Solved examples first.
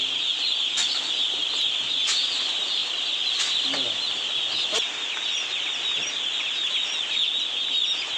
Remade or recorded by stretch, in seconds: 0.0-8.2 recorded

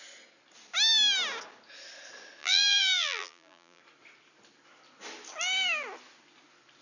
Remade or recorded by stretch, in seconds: 0.0-2.4 recorded; 2.4-3.8 remade; 3.8-6.8 recorded

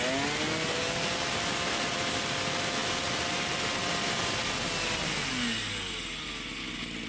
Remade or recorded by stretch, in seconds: 0.0-7.1 recorded

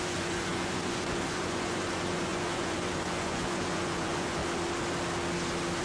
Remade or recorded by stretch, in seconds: 0.0-4.4 remade; 4.4-5.8 recorded

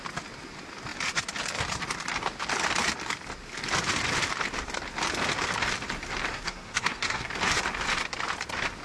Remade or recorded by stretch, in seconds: 0.0-6.3 recorded; 6.3-7.3 remade; 7.3-8.8 recorded